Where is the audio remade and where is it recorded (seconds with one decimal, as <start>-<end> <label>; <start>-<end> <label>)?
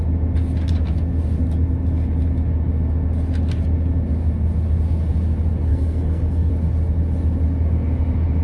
0.0-5.7 recorded; 5.7-6.5 remade; 6.5-8.4 recorded